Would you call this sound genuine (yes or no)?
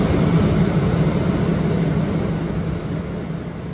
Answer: yes